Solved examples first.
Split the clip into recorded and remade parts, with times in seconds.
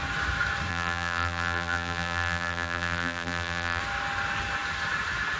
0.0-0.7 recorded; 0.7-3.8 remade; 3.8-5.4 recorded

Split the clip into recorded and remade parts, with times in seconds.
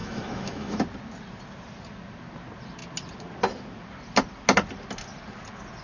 0.0-0.8 remade; 0.8-5.8 recorded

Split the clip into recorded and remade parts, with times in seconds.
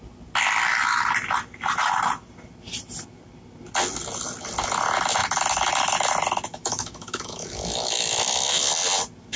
0.0-6.5 recorded; 6.5-8.6 remade; 8.6-9.4 recorded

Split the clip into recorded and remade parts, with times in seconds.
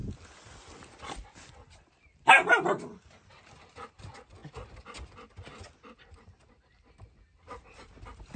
0.0-8.4 recorded